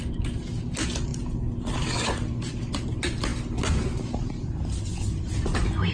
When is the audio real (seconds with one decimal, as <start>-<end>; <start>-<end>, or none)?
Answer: 0.0-5.9